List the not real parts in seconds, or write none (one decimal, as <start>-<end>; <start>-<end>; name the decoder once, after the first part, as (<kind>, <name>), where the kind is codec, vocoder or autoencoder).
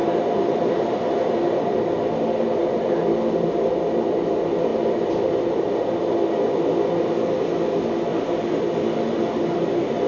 0.0-1.8 (vocoder, BigVGAN v2); 8.1-8.8